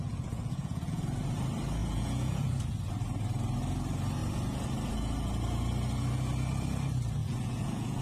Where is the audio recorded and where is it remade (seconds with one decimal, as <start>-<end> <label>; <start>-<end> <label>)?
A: 0.0-1.2 remade; 1.2-1.8 recorded; 1.8-2.6 remade; 2.6-7.2 recorded; 7.2-8.0 remade